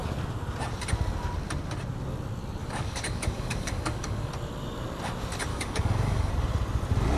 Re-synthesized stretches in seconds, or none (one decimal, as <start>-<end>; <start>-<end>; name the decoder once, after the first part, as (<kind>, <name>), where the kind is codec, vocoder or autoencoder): 2.6-4.3 (codec, DAC); 5.5-6.3